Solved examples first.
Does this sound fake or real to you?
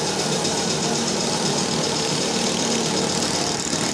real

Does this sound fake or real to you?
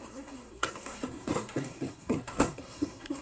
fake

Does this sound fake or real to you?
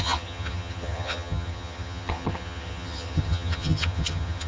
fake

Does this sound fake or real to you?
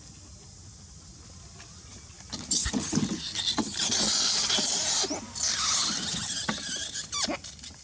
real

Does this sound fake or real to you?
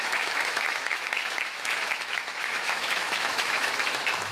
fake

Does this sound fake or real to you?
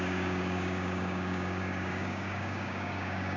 fake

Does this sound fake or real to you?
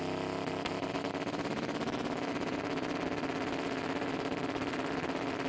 real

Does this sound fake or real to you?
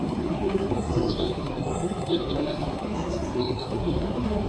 fake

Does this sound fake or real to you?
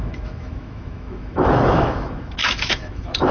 fake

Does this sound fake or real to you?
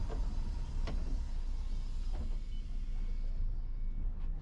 real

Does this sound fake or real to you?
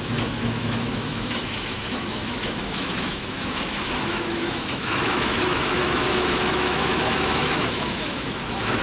fake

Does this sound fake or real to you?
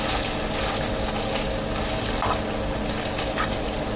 real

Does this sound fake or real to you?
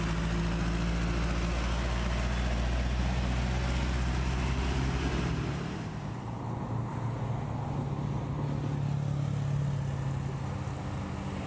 real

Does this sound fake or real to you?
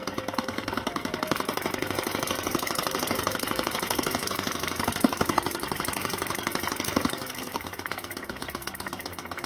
fake